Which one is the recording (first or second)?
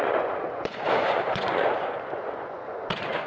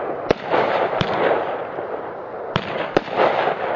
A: second